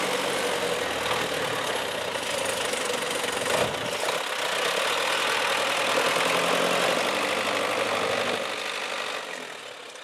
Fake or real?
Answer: real